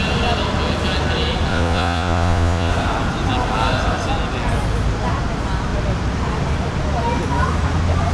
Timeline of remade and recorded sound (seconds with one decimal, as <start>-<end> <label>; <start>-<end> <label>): 0.0-1.5 recorded; 1.5-2.7 remade; 2.7-8.1 recorded